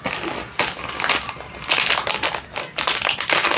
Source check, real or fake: real